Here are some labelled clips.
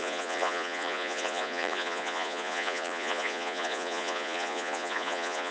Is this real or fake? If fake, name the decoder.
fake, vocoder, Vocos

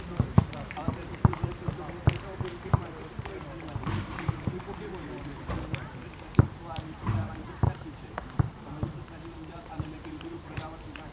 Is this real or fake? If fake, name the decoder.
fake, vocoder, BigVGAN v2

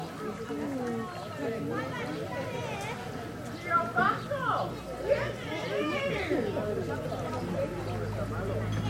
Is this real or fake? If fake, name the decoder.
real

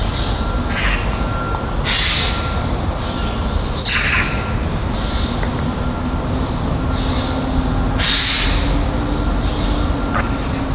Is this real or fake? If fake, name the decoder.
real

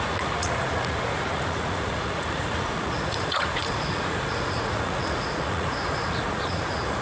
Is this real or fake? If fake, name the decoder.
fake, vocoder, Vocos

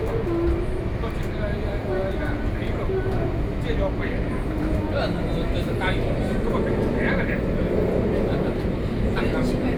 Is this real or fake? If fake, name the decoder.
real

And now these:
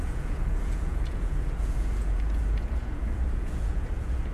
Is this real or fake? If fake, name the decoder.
fake, vocoder, Vocos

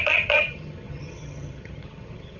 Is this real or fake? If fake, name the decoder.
fake, vocoder, HiFi-GAN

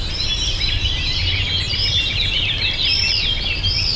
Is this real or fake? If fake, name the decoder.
real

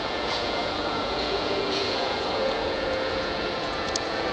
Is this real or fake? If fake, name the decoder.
fake, vocoder, Vocos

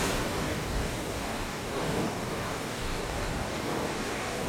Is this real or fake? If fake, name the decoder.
fake, codec, DAC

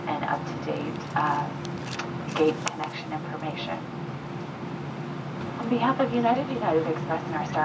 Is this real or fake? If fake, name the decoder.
real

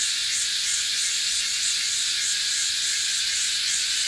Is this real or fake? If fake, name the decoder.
fake, vocoder, Vocos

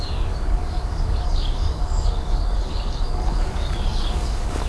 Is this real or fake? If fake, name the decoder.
fake, codec, DAC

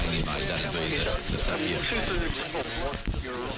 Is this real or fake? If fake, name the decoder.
real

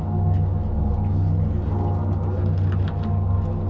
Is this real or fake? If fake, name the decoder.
real